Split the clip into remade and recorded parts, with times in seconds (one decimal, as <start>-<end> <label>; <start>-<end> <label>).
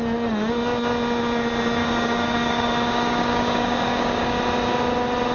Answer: 0.0-1.8 recorded; 1.8-4.4 remade; 4.4-5.3 recorded